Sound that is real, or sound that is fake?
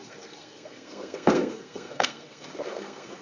fake